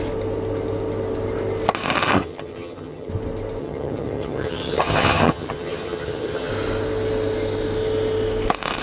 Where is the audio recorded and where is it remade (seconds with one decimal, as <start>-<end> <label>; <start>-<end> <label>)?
0.0-2.2 recorded; 2.2-3.1 remade; 3.1-3.6 recorded; 3.6-6.5 remade; 6.5-8.8 recorded